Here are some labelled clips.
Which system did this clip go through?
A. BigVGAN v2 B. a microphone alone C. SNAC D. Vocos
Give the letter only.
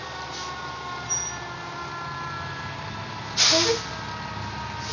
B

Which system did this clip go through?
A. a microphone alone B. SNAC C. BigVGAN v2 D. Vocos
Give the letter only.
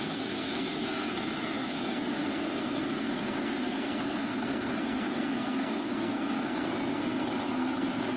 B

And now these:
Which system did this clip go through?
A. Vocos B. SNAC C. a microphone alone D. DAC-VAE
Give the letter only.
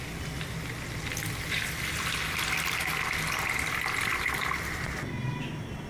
C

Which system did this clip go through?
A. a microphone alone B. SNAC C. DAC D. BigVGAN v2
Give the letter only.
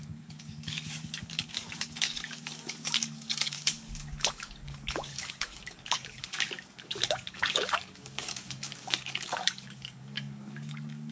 C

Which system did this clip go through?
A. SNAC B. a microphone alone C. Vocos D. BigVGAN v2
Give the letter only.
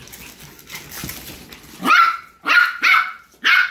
B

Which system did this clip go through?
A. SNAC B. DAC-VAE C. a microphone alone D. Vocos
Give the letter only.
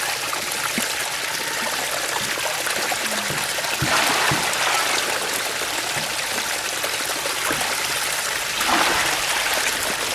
C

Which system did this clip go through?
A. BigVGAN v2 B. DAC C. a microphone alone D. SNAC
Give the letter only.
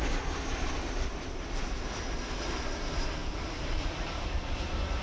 C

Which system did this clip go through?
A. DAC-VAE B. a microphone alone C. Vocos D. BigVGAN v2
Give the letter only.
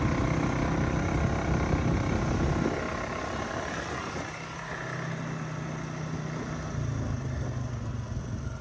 B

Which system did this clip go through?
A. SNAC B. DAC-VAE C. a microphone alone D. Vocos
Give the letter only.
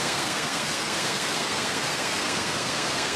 A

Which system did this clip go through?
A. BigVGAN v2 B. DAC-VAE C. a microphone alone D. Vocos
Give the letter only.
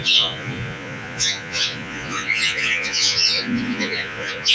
D